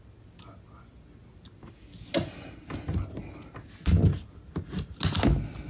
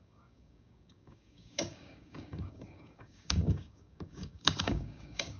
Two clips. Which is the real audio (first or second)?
first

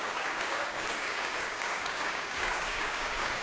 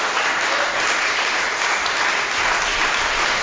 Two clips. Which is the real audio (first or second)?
second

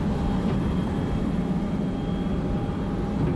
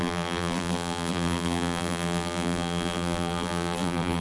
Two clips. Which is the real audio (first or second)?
first